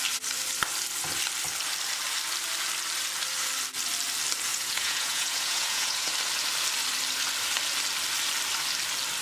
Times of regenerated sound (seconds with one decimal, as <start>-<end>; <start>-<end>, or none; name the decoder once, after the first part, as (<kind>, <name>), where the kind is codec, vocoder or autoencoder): 4.5-6.1 (vocoder, Vocos)

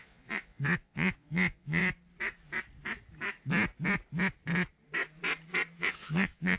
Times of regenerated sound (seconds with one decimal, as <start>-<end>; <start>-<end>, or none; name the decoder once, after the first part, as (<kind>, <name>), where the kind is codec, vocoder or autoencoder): 0.0-1.8 (vocoder, Vocos); 5.8-6.6

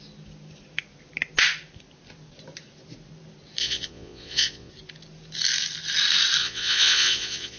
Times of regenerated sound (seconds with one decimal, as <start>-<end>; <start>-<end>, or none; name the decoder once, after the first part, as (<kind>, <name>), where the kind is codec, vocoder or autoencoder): 3.6-4.7 (vocoder, Vocos); 6.4-7.6

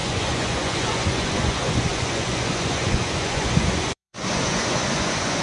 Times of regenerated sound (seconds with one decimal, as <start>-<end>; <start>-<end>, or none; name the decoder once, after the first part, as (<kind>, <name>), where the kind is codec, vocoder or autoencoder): 0.0-5.4 (vocoder, Vocos)